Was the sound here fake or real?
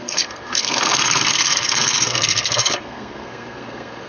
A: fake